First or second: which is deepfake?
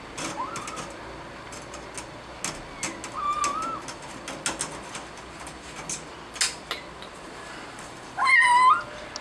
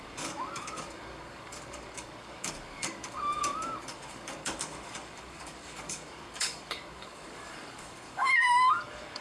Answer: second